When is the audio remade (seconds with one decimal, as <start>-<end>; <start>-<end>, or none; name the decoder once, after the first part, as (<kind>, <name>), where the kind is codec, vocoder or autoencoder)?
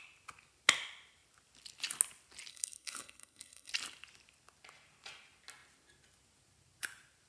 2.5-3.7 (codec, SNAC)